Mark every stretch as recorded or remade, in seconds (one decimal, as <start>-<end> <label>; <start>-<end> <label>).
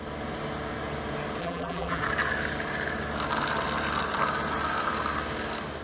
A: 0.0-1.4 recorded; 1.4-2.0 remade; 2.0-5.8 recorded